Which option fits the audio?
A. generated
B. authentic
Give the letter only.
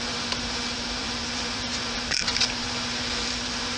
A